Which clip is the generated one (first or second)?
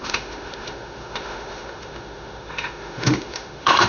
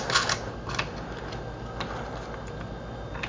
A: first